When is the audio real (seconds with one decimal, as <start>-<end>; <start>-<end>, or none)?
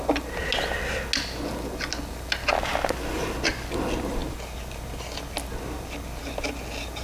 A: 0.0-7.0